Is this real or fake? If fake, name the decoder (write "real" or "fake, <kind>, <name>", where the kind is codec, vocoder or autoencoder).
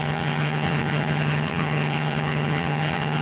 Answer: fake, vocoder, HiFi-GAN